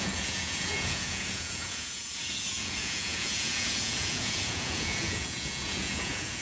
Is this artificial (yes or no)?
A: yes